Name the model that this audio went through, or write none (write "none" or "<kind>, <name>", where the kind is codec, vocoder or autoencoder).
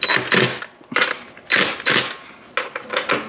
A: none